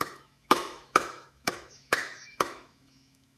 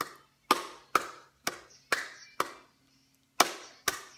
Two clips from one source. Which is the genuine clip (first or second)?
second